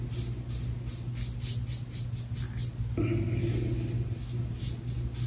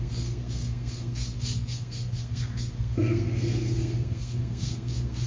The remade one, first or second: second